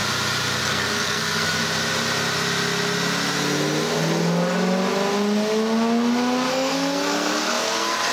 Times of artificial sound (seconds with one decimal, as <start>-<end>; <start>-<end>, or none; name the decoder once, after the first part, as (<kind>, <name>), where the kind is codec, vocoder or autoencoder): 0.6-1.6 (codec, SNAC); 6.5-8.1